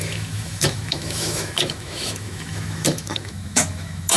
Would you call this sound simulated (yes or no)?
yes